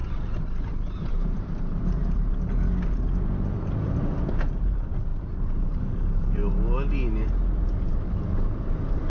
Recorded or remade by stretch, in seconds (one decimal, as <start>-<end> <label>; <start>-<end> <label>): 0.0-1.1 recorded; 1.1-2.0 remade; 2.0-3.7 recorded; 3.7-6.4 remade; 6.4-7.6 recorded; 7.6-9.1 remade